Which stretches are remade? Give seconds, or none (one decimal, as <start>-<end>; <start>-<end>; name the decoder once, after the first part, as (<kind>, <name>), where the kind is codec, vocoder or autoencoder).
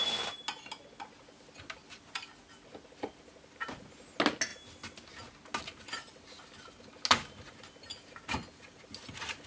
none